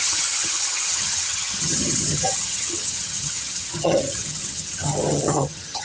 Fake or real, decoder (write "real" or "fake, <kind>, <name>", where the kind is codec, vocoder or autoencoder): fake, vocoder, HiFi-GAN